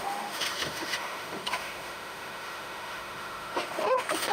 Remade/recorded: remade